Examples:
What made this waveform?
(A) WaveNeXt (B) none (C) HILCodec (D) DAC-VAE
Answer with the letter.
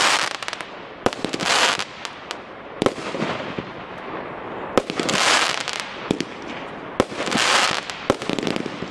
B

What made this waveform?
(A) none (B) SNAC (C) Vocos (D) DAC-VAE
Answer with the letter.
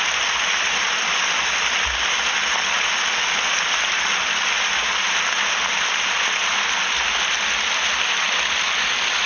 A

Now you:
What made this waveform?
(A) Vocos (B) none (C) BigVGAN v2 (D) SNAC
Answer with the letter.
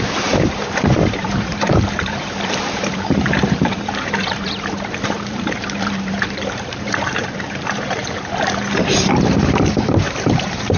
C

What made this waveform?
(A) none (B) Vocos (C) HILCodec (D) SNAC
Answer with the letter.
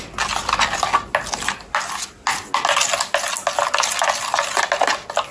A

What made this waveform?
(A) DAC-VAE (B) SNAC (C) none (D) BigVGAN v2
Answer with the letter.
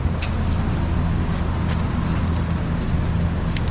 C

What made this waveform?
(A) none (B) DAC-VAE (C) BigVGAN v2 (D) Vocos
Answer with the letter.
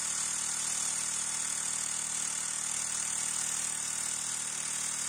A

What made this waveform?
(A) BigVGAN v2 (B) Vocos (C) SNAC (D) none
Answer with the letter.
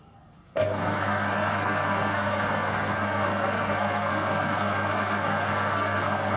C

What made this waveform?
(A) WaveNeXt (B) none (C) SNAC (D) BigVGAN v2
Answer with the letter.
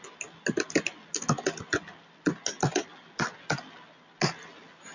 B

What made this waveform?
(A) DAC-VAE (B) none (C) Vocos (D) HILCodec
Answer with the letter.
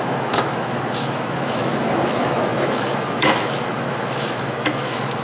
A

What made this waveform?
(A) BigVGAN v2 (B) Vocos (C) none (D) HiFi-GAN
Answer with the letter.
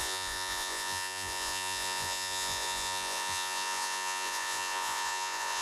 B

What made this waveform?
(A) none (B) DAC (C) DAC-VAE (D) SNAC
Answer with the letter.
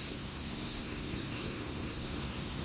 D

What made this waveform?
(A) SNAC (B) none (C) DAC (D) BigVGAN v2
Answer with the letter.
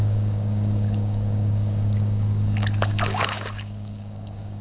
C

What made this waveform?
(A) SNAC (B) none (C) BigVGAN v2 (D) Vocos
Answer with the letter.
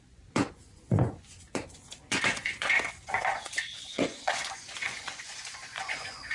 D